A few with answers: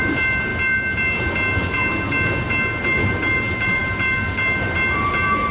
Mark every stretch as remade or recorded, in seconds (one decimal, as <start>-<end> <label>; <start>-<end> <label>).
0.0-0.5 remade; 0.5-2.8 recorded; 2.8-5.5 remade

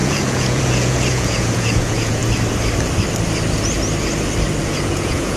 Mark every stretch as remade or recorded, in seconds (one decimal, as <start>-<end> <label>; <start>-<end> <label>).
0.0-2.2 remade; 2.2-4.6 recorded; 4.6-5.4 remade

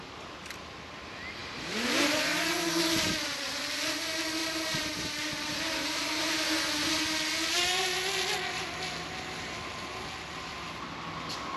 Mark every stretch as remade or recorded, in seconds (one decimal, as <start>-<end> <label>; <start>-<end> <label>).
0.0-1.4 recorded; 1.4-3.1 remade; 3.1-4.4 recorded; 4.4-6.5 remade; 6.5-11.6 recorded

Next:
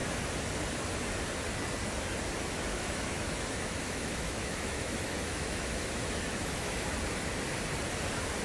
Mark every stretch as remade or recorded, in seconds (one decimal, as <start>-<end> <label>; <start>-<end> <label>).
0.0-2.7 recorded; 2.7-7.0 remade; 7.0-8.4 recorded

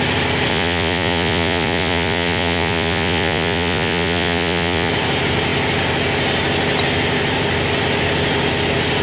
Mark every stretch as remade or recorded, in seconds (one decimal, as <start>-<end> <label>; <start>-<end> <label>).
0.0-0.5 recorded; 0.5-4.9 remade; 4.9-9.0 recorded

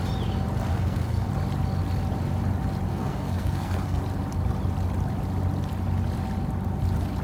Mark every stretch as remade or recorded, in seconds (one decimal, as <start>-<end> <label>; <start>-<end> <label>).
0.0-0.7 recorded; 0.7-1.3 remade; 1.3-2.9 recorded; 2.9-4.0 remade; 4.0-7.2 recorded

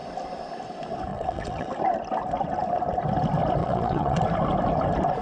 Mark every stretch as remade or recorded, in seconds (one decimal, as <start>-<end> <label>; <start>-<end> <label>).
0.0-1.1 recorded; 1.1-1.7 remade; 1.7-3.6 recorded; 3.6-4.2 remade; 4.2-5.2 recorded

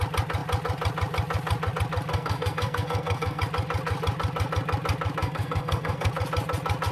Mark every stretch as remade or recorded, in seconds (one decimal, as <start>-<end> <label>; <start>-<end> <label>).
0.0-2.1 recorded; 2.1-3.4 remade; 3.4-5.2 recorded; 5.2-6.1 remade; 6.1-6.9 recorded